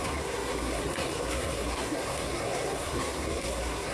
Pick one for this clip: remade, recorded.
remade